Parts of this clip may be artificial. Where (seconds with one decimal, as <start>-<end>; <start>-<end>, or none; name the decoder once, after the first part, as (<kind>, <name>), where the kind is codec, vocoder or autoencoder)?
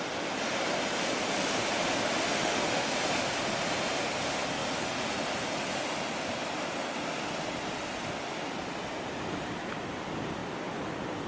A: 2.3-2.9 (autoencoder, DAC-VAE)